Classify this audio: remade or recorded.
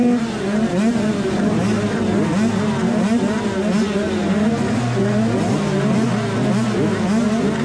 recorded